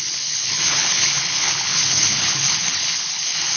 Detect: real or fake fake